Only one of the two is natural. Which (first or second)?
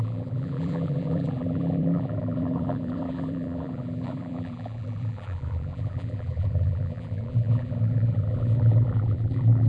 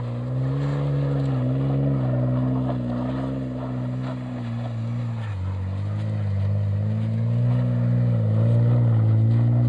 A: second